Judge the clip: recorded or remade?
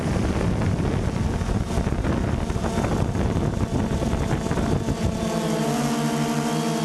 recorded